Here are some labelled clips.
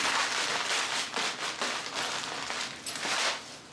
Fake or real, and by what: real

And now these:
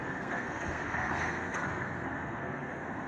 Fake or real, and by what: fake, codec, SNAC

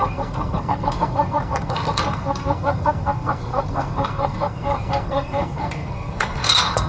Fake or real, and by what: fake, codec, SNAC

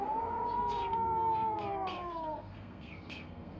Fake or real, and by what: fake, codec, SNAC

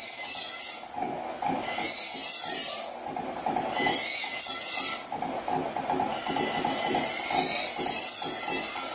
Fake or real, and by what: real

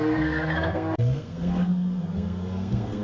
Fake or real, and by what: fake, codec, SNAC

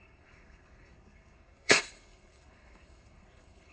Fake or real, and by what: fake, codec, SNAC